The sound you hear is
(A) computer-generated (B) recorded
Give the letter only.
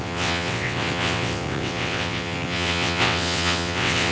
A